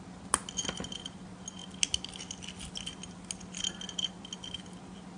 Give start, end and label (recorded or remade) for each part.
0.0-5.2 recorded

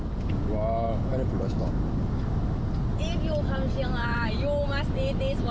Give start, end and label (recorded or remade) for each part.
0.0-5.5 recorded

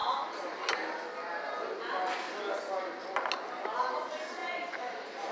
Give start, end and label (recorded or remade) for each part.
0.0-5.3 recorded

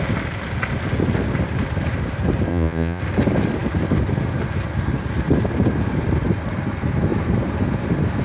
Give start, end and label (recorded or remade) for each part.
0.0-2.5 recorded; 2.5-3.0 remade; 3.0-8.2 recorded

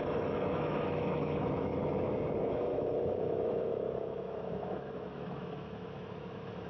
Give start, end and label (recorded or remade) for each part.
0.0-1.7 remade; 1.7-2.4 recorded; 2.4-6.7 remade

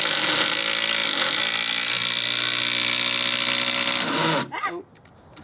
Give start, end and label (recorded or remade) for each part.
0.0-5.4 recorded

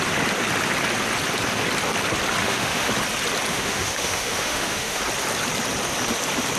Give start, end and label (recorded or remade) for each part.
0.0-2.4 recorded; 2.4-2.9 remade; 2.9-3.5 recorded; 3.5-5.0 remade; 5.0-6.6 recorded